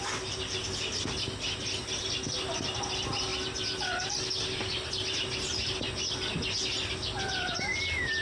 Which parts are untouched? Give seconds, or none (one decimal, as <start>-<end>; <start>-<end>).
0.0-8.2